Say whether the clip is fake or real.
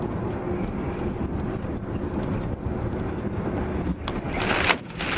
real